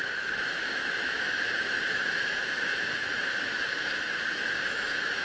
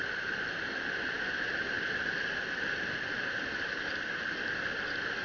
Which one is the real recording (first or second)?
second